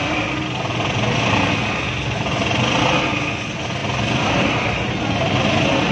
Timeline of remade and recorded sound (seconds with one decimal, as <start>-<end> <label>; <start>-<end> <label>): 0.0-5.9 recorded